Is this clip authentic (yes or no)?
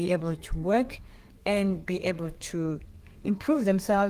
no